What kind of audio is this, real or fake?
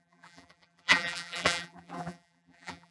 fake